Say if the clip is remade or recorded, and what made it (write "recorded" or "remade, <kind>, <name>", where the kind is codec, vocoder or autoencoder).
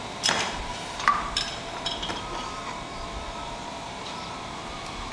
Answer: remade, vocoder, BigVGAN v2